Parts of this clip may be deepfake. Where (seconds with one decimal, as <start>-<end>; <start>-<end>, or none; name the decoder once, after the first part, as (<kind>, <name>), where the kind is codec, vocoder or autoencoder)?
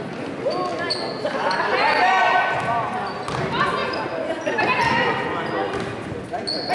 none